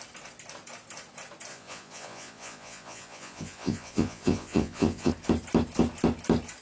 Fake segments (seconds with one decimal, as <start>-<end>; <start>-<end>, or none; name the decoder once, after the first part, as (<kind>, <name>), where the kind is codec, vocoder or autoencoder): 1.5-5.1 (vocoder, Vocos)